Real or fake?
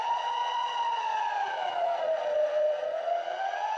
fake